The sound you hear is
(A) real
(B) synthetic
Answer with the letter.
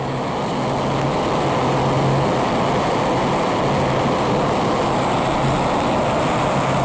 A